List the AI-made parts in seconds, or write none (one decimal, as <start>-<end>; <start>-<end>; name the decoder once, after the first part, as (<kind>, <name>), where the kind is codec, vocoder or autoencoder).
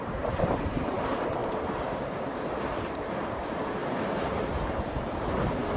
0.0-1.4 (vocoder, BigVGAN v2); 2.6-5.8